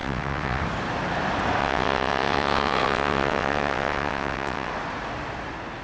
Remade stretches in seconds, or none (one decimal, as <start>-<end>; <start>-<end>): 0.0-0.6; 1.6-4.7